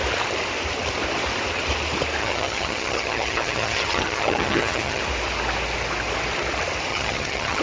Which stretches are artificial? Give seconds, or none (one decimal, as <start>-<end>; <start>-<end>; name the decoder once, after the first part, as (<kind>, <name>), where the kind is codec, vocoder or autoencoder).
2.2-5.0 (vocoder, HiFi-GAN); 6.9-7.6